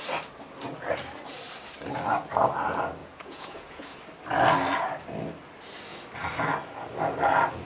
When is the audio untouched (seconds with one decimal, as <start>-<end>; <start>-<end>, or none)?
0.0-3.0; 4.0-7.7